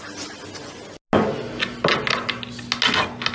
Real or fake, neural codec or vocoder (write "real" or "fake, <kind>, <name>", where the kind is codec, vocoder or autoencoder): real